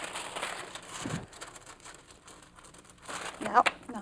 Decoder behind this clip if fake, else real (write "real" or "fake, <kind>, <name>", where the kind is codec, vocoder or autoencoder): fake, vocoder, BigVGAN v2